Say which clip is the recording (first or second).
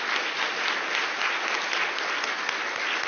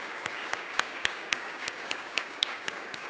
first